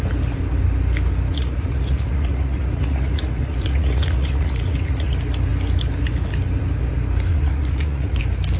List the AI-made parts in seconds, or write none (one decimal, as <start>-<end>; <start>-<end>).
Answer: 1.3-5.1; 7.3-8.2